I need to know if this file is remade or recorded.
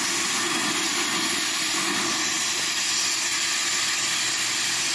recorded